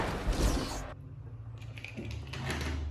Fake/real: real